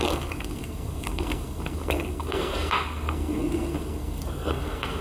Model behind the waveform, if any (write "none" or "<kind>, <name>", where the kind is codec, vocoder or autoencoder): codec, SNAC